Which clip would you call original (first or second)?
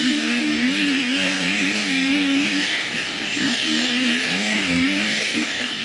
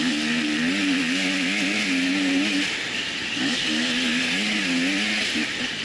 second